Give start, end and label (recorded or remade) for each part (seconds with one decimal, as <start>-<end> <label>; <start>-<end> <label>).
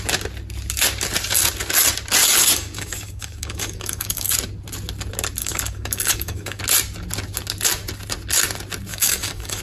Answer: 0.0-2.4 recorded; 2.4-4.3 remade; 4.3-5.4 recorded; 5.4-6.6 remade; 6.6-8.9 recorded; 8.9-9.6 remade